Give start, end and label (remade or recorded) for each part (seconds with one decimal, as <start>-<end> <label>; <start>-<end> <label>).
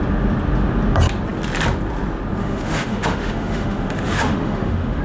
0.0-2.4 recorded; 2.4-5.0 remade